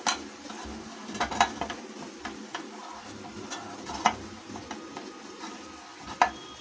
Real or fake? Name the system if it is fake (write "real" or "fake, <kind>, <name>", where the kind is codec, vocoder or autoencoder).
real